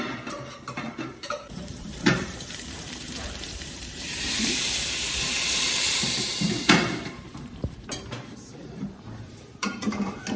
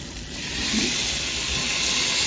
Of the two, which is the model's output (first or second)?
first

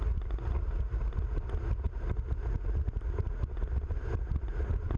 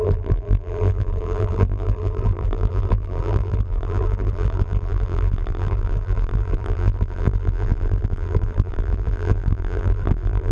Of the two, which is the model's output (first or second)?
second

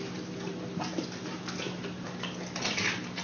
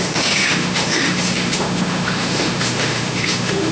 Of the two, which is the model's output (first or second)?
second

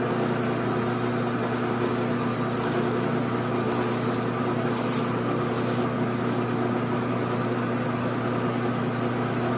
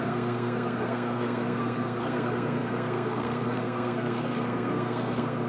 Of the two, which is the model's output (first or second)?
second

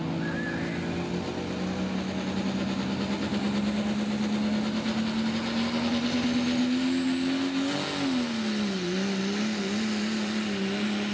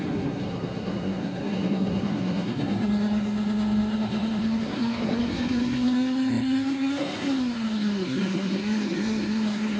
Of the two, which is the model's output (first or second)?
second